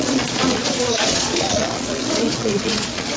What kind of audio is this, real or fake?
fake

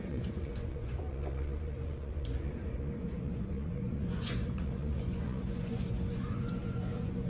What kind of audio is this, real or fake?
fake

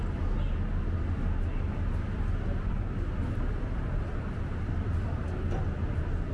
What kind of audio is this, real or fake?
real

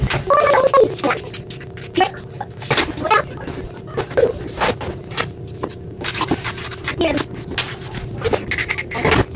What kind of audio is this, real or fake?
real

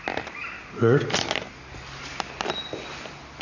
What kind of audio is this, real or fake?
real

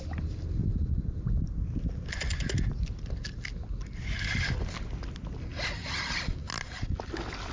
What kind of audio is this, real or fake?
real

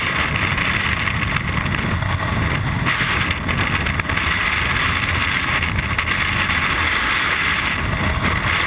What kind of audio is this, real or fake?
real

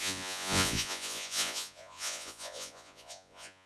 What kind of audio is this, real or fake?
fake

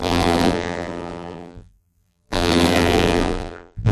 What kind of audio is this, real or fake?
fake